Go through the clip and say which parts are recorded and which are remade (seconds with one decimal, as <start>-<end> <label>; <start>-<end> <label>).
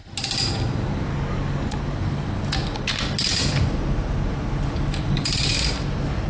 0.0-1.1 recorded; 1.1-1.8 remade; 1.8-6.3 recorded